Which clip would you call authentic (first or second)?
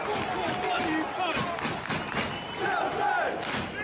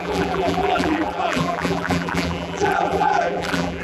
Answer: first